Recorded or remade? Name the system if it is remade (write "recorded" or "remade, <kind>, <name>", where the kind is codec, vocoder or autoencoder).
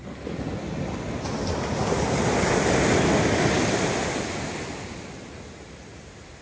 recorded